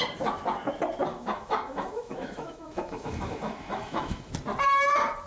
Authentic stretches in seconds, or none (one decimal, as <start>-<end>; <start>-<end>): 0.0-1.1; 4.3-5.3